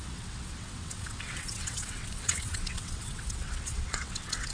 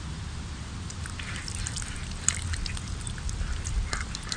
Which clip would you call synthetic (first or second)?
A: first